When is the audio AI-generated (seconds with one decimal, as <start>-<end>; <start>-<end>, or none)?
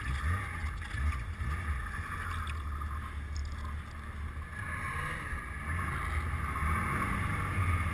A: none